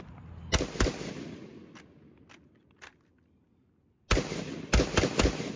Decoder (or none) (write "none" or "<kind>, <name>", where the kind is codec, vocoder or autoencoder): none